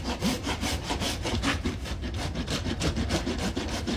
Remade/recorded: remade